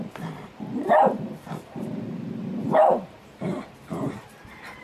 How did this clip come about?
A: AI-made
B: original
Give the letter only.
A